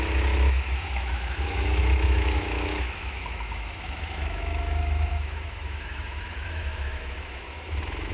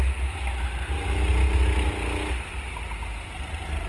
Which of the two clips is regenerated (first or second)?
first